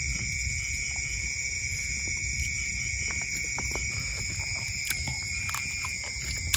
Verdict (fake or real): real